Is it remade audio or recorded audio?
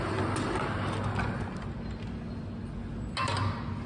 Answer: recorded